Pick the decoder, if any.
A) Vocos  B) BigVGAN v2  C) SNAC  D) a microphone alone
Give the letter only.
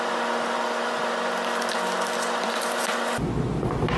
D